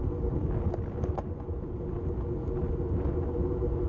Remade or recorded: recorded